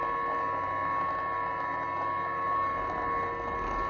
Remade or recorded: recorded